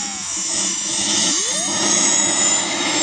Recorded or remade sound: remade